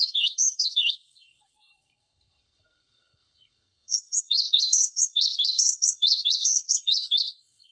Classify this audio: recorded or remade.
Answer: remade